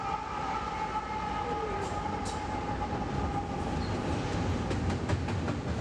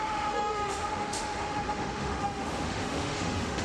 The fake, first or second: second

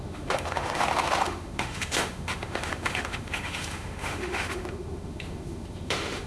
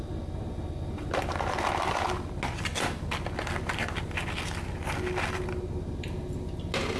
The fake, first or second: first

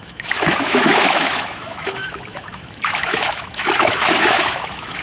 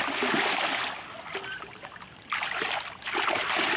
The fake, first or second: first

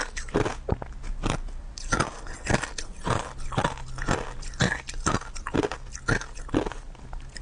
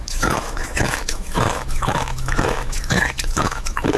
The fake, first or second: second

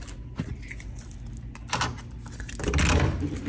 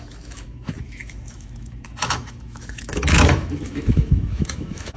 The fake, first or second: second